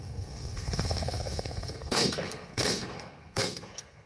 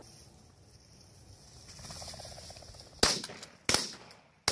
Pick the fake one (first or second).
first